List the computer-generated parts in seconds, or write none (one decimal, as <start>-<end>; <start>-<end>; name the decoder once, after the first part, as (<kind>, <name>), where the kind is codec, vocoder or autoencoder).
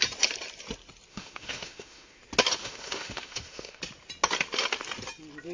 1.1-2.2 (autoencoder, DAC-VAE); 2.6-3.8